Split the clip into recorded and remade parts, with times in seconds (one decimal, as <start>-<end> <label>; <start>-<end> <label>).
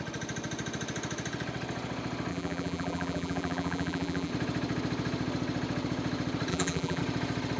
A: 0.0-2.3 recorded; 2.3-4.3 remade; 4.3-6.5 recorded; 6.5-7.0 remade; 7.0-7.6 recorded